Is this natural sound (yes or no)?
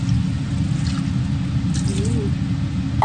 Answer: yes